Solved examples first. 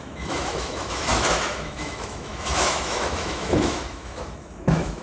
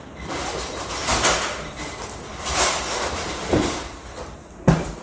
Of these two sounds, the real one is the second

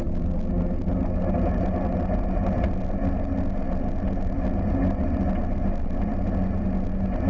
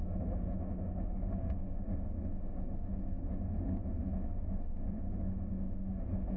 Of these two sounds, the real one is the first